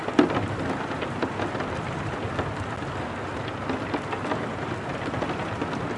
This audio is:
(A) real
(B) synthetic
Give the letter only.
A